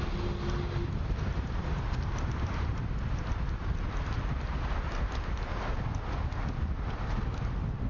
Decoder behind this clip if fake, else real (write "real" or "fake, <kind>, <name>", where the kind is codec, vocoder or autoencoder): real